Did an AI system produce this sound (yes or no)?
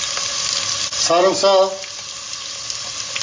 no